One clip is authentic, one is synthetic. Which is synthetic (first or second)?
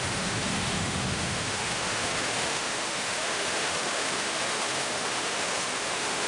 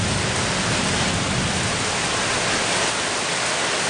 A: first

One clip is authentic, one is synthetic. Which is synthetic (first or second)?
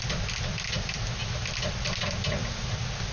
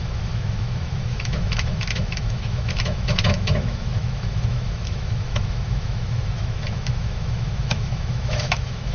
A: second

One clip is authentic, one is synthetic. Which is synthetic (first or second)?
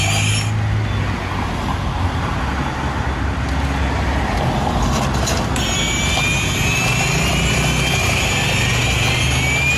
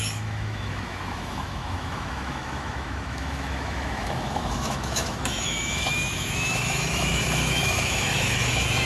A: second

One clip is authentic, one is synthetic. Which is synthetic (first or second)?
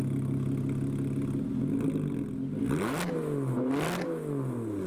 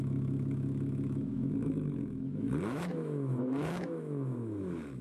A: second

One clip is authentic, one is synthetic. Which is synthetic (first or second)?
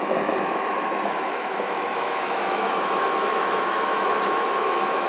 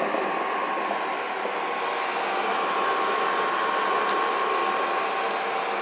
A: first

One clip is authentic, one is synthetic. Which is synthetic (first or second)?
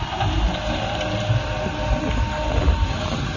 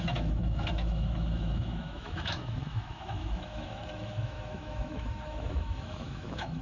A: second